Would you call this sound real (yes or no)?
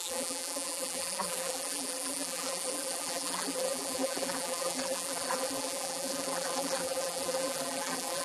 no